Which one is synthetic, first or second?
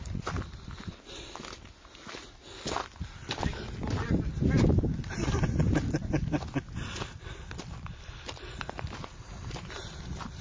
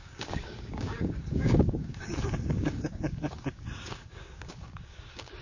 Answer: second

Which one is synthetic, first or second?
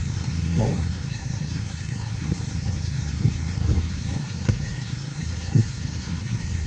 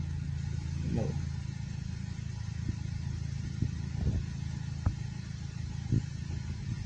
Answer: first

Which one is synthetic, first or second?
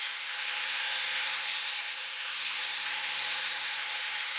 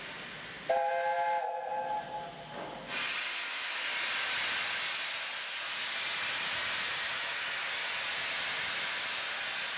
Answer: first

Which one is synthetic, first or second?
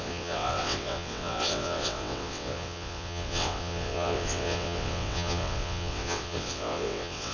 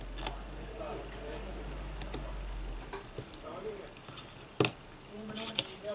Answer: first